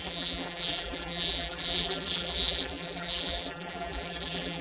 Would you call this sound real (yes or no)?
no